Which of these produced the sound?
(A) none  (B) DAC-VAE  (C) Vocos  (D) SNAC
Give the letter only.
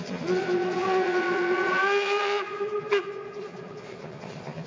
C